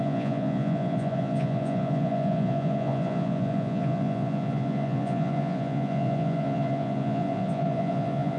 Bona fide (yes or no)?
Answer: no